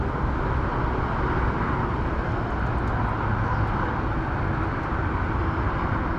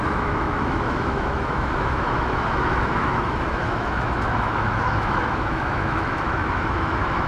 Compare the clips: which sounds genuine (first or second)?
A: first